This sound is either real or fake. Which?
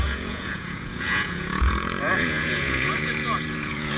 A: fake